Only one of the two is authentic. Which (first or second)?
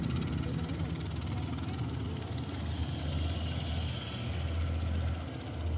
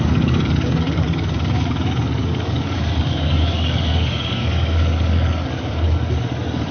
first